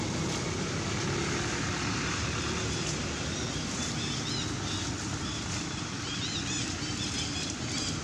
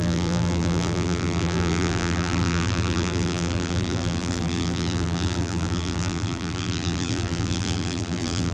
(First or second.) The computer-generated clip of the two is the second